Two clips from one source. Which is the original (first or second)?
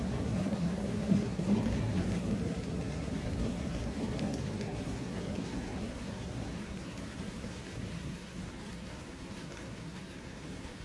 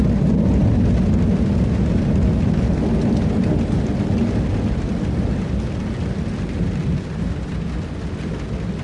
second